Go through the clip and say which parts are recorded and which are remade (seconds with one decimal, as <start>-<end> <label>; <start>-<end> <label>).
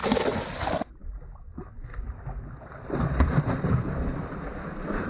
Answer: 0.0-5.1 recorded